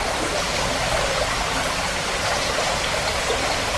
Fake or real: real